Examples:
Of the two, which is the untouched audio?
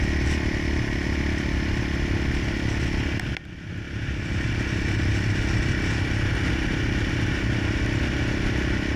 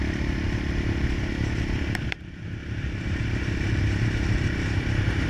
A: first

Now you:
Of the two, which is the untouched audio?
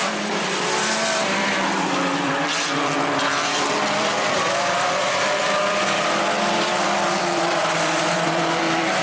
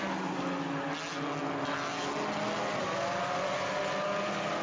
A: second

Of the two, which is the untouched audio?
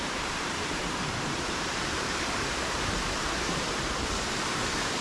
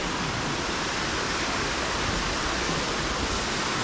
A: second